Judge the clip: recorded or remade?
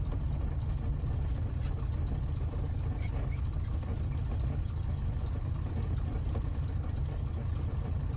recorded